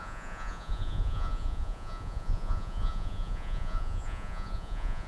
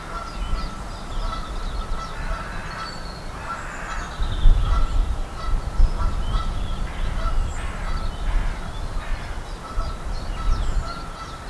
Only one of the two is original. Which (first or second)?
second